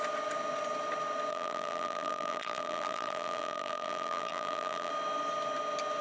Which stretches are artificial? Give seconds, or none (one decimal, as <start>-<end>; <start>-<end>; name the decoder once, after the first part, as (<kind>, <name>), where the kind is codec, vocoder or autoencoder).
1.3-4.9 (vocoder, BigVGAN v2)